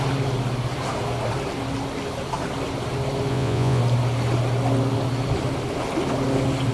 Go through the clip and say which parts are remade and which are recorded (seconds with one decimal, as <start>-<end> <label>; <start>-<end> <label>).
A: 0.0-3.3 recorded; 3.3-3.8 remade; 3.8-6.7 recorded